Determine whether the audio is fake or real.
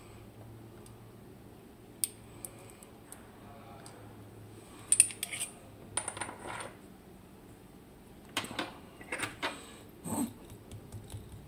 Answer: real